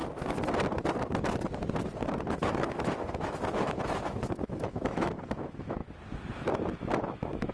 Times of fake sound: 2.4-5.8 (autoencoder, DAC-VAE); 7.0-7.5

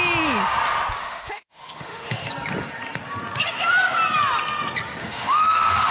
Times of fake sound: 1.0-2.3 (autoencoder, DAC-VAE); 5.0-5.9

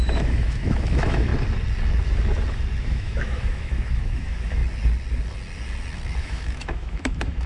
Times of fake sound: 0.0-1.3 (autoencoder, DAC-VAE); 2.8-4.6; 6.2-7.5

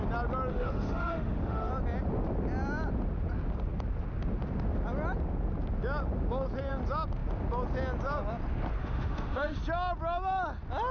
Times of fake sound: 0.5-1.7 (autoencoder, DAC-VAE); 8.8-9.6

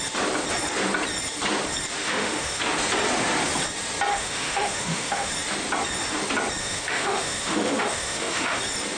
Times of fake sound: 2.0-2.6 (autoencoder, DAC-VAE); 4.1-5.3; 6.6-8.6

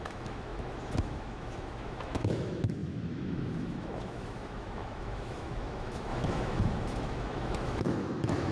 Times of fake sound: 0.0-8.5 (autoencoder, DAC-VAE)

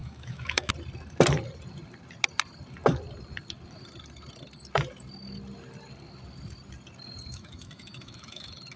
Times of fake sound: 0.0-0.7 (autoencoder, DAC-VAE); 7.3-8.8